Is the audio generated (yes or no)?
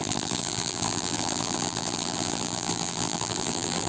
yes